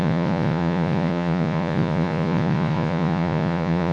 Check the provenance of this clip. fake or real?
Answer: fake